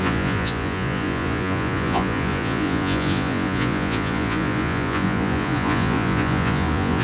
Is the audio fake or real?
fake